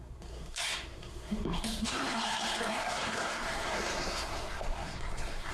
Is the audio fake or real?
fake